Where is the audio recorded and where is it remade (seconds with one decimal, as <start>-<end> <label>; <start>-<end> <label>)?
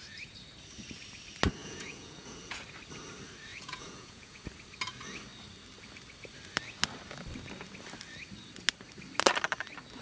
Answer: 0.0-1.6 recorded; 1.6-2.6 remade; 2.6-3.5 recorded; 3.5-4.4 remade; 4.4-10.0 recorded